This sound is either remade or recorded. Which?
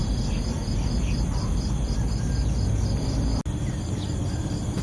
recorded